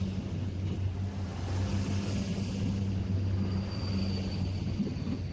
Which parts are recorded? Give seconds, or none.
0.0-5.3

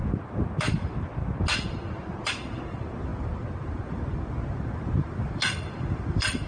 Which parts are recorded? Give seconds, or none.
0.0-0.7; 1.2-2.3